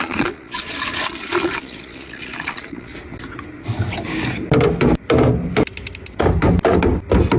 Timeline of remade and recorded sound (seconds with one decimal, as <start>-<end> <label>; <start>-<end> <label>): 0.0-2.9 remade; 2.9-7.4 recorded